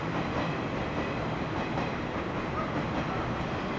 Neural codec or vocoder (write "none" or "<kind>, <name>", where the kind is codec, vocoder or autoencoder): none